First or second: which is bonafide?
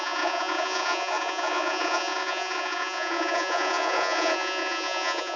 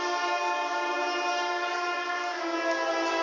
second